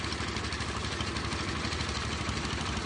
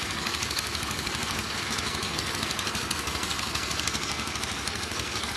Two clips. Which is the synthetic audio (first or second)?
second